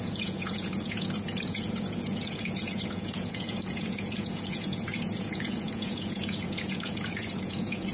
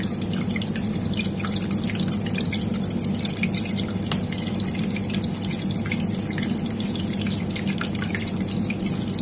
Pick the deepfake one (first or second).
first